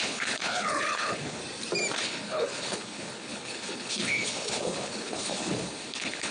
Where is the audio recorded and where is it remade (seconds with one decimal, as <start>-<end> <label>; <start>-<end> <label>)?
0.0-1.4 remade; 1.4-2.0 recorded; 2.0-6.3 remade